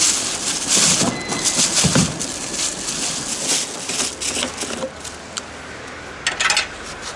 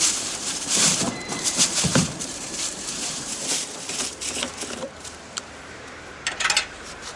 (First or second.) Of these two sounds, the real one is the first